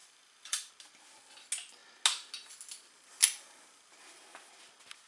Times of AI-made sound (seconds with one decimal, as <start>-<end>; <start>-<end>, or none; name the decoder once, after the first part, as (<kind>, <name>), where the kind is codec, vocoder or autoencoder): 0.0-0.7 (vocoder, BigVGAN v2)